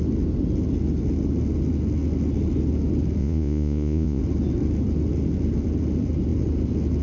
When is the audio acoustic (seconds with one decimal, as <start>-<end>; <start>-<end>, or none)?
0.0-3.2; 4.2-7.0

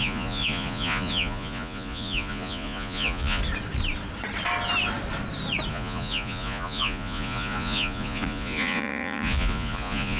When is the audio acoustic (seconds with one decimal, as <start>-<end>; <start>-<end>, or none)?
3.4-5.7